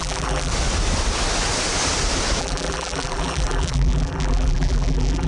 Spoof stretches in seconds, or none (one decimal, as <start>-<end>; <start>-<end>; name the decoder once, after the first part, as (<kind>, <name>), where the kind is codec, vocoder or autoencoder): 0.0-0.5 (vocoder, BigVGAN v2); 2.4-5.3